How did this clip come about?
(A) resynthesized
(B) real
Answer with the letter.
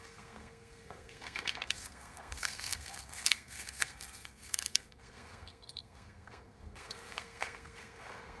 A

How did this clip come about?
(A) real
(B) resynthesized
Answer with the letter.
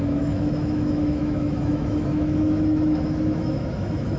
B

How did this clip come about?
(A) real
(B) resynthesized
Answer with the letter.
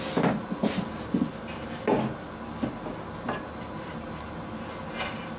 A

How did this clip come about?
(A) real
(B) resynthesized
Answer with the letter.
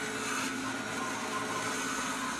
A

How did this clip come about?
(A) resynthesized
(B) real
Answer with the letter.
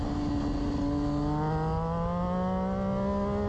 B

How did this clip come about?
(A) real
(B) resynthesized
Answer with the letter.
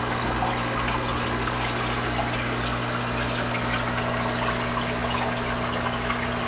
A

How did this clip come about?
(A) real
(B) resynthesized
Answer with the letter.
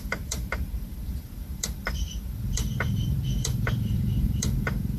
B